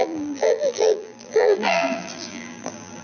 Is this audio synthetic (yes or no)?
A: yes